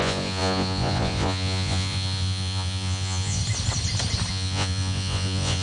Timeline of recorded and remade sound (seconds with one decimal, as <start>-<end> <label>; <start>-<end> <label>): 0.0-3.4 remade; 3.4-4.3 recorded; 4.3-5.6 remade